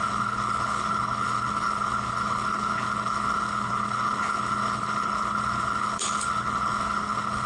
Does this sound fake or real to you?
fake